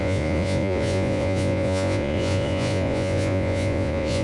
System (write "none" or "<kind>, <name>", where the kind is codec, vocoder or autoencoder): vocoder, Vocos